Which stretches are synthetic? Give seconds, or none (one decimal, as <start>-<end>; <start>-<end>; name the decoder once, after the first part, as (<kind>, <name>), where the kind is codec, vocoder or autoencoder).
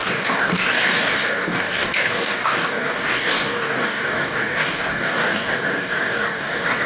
0.0-6.9 (codec, DAC)